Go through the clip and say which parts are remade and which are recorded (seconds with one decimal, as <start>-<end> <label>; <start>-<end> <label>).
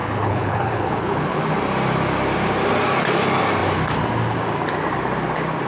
0.0-1.4 remade; 1.4-5.7 recorded